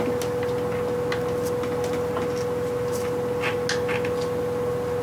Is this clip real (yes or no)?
yes